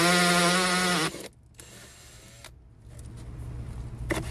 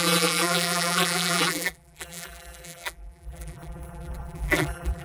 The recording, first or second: first